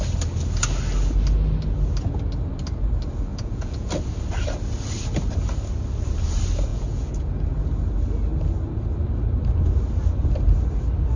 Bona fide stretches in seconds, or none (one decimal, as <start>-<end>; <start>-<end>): 0.0-3.3; 3.9-6.7; 7.3-11.2